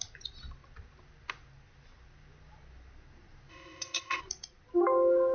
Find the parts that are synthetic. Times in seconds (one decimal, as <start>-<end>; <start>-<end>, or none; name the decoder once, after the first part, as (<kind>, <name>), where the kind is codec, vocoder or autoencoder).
3.5-4.2 (codec, ZipCodec)